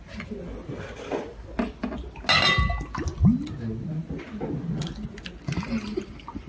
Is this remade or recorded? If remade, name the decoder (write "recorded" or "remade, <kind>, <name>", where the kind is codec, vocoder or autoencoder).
recorded